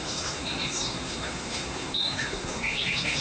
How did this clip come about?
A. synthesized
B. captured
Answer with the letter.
A